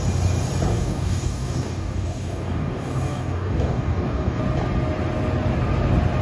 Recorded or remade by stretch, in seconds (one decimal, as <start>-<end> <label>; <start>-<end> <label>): 0.0-0.7 recorded; 0.7-4.4 remade; 4.4-6.2 recorded